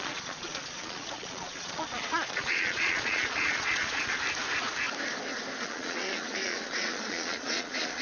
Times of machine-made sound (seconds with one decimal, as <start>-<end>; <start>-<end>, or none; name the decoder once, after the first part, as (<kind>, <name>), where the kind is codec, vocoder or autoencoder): 0.0-4.1 (vocoder, Vocos); 5.6-8.0